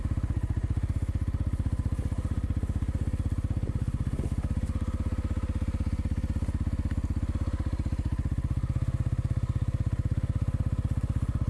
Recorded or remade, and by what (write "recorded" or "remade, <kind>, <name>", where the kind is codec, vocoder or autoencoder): recorded